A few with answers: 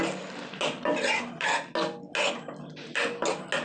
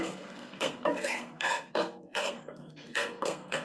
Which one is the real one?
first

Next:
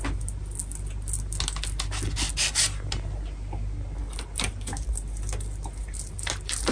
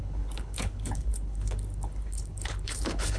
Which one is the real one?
first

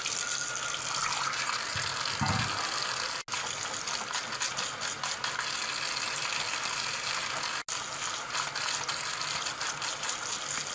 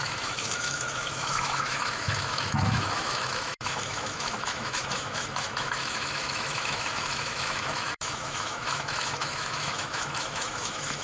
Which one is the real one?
first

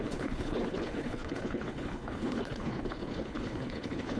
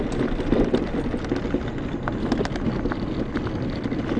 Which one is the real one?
second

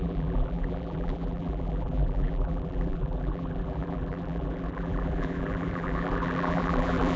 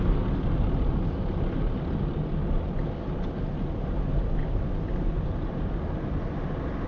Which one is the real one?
second